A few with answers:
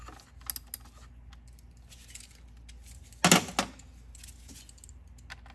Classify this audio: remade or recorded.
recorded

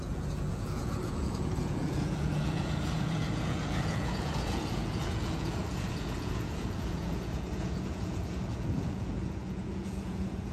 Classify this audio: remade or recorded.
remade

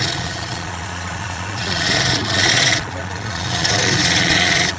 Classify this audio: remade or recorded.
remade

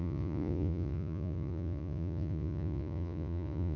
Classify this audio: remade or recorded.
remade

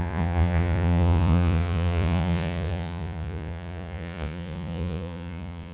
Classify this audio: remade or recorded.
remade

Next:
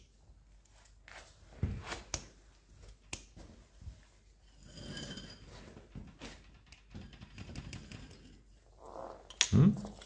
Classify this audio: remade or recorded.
recorded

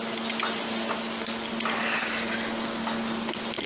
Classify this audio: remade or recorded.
recorded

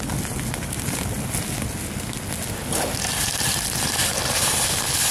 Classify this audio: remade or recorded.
recorded